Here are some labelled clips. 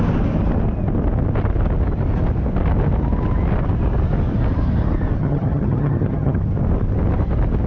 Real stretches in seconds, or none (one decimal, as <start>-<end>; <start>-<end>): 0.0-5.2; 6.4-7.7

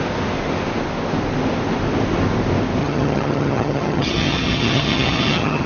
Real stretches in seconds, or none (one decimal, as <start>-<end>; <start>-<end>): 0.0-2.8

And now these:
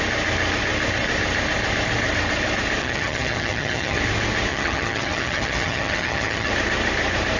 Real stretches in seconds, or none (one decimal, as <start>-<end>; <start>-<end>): 0.0-2.8; 4.0-4.5; 6.5-7.4

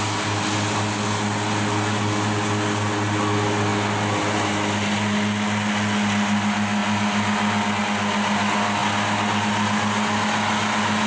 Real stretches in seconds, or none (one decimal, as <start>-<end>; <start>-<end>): 0.0-11.1

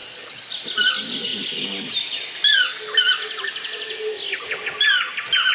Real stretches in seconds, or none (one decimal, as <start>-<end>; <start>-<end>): 0.0-5.5